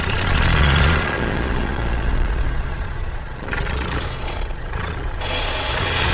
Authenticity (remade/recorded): remade